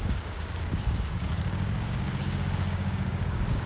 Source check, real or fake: fake